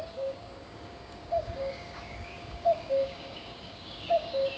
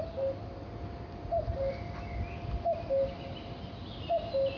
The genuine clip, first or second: second